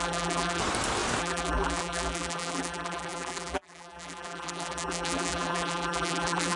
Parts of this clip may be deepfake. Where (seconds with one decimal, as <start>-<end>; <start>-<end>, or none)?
0.0-0.6; 1.2-6.6